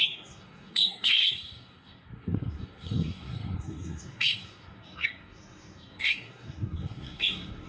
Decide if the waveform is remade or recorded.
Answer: remade